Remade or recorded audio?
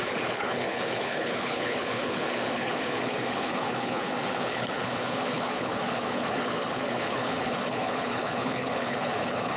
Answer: remade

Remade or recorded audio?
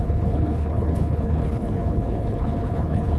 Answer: remade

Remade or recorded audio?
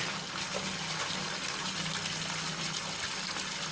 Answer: recorded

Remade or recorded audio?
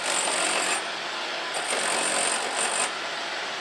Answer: recorded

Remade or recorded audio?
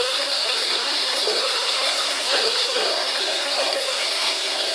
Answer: remade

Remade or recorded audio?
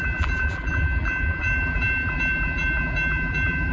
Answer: remade